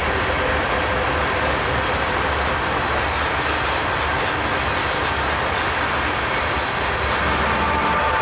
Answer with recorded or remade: recorded